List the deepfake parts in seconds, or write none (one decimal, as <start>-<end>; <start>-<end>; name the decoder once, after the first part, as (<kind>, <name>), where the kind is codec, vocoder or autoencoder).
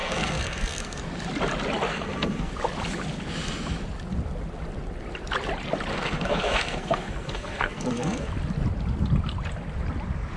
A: 0.0-1.0 (codec, SNAC); 1.9-2.5; 5.9-8.3